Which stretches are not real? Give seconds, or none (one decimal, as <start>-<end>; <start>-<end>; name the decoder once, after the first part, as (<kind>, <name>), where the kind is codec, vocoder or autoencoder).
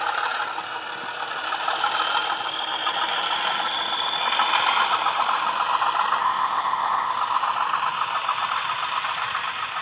6.2-7.1 (codec, ZipCodec)